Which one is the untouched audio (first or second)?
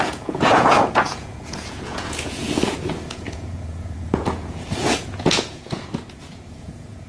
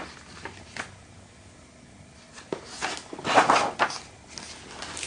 second